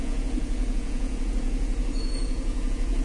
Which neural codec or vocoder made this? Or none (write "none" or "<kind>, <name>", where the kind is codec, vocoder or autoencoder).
vocoder, Vocos